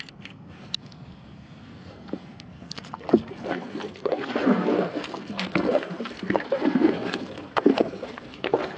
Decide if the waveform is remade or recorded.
remade